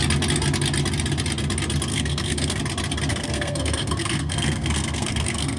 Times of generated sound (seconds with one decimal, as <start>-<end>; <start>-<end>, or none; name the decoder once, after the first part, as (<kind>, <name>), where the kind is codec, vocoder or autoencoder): 1.9-2.6 (codec, SNAC); 3.1-5.6